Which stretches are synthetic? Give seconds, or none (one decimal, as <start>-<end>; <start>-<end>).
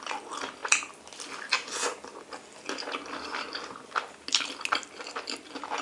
none